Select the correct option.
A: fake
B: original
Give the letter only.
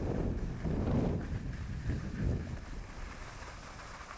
B